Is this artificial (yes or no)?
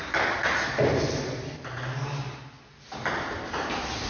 no